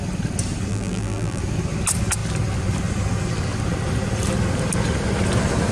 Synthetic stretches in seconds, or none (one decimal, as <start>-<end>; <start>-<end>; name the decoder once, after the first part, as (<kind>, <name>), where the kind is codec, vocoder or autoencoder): 0.7-1.4 (vocoder, BigVGAN v2)